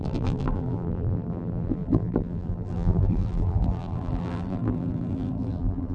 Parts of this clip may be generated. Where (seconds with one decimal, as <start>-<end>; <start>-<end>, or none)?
0.0-5.9